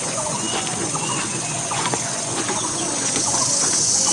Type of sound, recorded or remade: remade